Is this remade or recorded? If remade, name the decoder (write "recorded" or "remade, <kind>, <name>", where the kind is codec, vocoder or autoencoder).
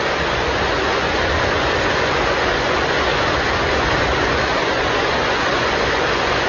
remade, vocoder, Vocos